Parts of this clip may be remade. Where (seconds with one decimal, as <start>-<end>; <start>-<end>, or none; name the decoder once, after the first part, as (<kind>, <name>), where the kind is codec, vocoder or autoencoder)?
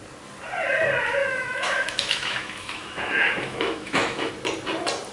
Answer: 1.2-4.3 (autoencoder, DAC-VAE)